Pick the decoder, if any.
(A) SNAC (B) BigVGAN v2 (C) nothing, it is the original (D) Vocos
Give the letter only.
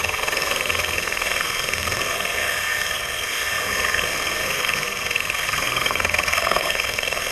A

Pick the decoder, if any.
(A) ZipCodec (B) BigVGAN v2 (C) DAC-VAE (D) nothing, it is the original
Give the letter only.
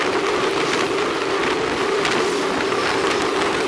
D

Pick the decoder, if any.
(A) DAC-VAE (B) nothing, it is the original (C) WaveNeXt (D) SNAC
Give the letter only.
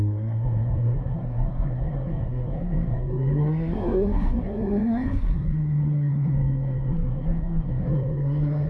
D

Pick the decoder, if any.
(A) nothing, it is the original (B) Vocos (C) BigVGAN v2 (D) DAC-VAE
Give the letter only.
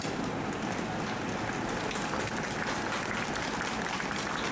A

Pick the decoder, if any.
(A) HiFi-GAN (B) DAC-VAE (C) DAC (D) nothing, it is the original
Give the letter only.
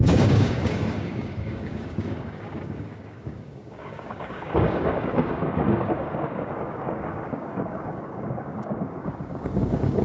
C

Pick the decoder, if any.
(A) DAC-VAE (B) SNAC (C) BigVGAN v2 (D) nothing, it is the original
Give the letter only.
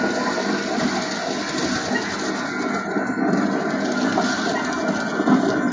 D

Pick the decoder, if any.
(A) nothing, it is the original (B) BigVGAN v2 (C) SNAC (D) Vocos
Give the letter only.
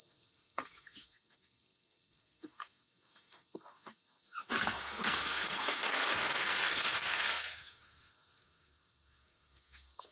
C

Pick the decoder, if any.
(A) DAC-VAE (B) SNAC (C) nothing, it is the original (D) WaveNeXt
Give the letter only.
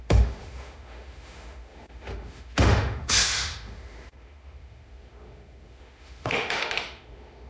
A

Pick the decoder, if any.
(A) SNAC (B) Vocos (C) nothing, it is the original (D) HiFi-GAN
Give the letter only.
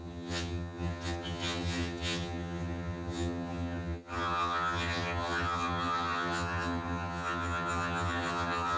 D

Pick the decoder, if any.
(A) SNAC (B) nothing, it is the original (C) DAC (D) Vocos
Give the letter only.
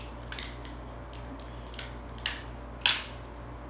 B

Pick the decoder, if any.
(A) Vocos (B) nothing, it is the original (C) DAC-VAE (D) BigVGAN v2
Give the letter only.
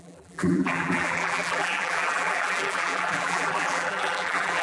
D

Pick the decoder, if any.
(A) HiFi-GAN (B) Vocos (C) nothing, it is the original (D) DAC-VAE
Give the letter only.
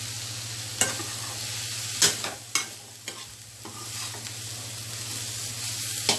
C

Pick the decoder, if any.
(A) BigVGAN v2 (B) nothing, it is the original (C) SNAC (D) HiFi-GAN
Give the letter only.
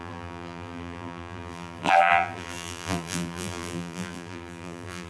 A